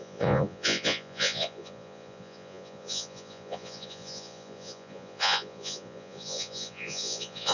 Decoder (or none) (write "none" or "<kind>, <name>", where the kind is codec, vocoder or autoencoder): vocoder, Vocos